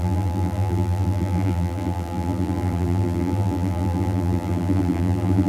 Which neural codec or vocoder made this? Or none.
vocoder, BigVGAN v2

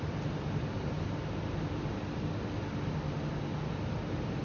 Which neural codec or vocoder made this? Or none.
none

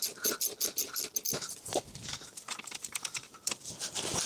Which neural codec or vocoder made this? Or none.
none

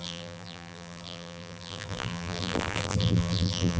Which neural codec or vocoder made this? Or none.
vocoder, BigVGAN v2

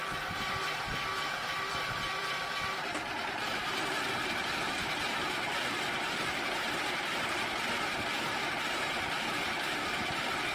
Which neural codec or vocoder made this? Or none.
vocoder, BigVGAN v2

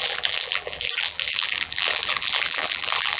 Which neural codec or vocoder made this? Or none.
vocoder, BigVGAN v2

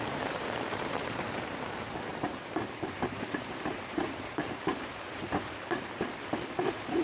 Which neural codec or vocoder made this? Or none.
vocoder, BigVGAN v2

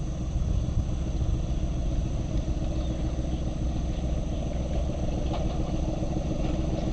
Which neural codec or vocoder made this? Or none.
none